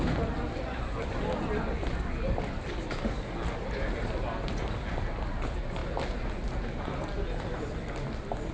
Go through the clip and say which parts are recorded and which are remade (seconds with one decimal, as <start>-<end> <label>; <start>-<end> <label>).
0.0-8.5 recorded